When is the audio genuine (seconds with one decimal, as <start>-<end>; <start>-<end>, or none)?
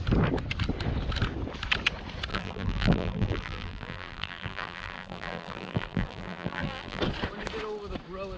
0.0-2.3; 7.0-8.4